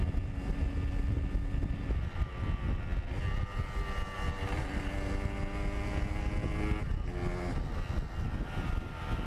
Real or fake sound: real